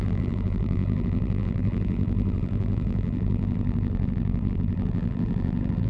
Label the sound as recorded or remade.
remade